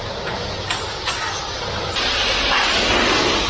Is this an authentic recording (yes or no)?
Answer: yes